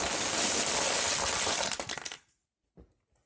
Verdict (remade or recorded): recorded